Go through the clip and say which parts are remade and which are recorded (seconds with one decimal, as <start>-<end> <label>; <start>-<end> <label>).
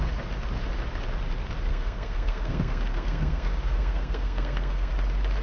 0.0-1.7 recorded; 1.7-4.9 remade; 4.9-5.4 recorded